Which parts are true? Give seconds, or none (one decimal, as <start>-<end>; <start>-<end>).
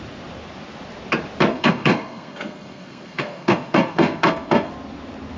0.0-1.5; 4.7-5.4